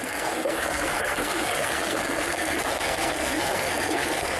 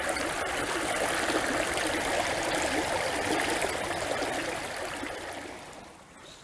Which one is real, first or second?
second